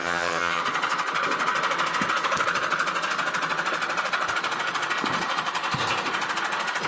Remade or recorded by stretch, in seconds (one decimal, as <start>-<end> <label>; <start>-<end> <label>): 0.0-0.6 remade; 0.6-6.9 recorded